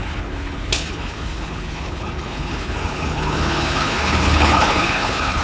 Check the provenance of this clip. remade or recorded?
remade